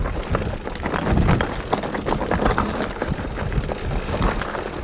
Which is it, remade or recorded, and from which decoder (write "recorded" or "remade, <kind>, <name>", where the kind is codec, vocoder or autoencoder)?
recorded